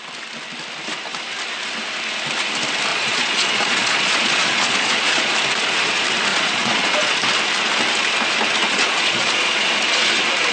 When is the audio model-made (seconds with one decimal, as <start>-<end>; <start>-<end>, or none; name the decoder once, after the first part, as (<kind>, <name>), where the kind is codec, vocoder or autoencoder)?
2.9-5.3 (vocoder, Vocos); 6.3-7.2; 8.6-9.8